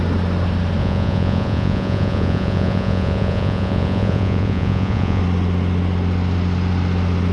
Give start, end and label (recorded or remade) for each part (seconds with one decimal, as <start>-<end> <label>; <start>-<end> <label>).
0.0-0.8 recorded; 0.8-5.2 remade; 5.2-7.3 recorded